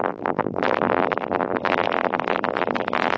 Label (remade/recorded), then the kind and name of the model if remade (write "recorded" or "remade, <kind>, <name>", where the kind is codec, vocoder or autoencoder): remade, vocoder, BigVGAN v2